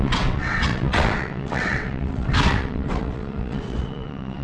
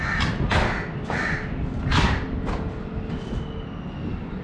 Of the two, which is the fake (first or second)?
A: first